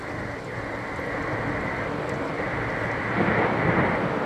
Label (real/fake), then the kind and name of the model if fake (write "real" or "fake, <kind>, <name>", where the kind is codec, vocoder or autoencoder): real